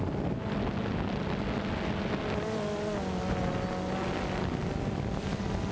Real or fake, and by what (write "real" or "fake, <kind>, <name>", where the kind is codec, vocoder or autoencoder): real